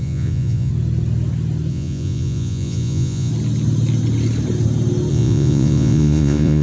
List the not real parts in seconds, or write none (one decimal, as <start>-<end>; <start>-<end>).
0.0-0.7; 1.7-3.3; 5.1-6.6